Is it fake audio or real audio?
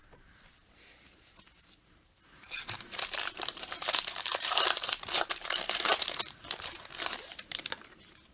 fake